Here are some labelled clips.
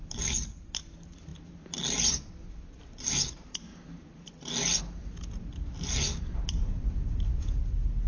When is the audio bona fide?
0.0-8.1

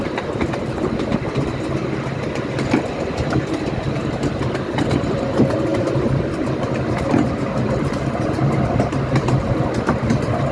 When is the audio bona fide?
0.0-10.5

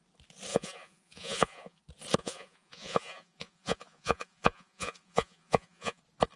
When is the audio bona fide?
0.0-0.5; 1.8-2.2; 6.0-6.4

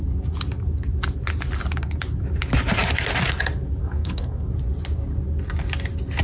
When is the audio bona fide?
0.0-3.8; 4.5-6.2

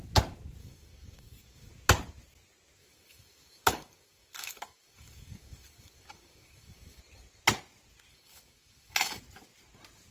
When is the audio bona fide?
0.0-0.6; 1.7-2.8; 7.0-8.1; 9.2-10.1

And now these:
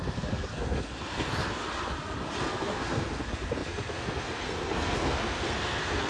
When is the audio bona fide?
1.6-2.4